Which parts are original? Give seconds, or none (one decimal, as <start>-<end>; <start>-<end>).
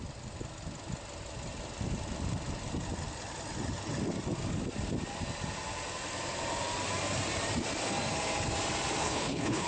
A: 0.0-9.0